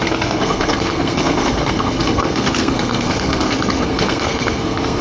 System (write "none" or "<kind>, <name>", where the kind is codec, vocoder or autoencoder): codec, SNAC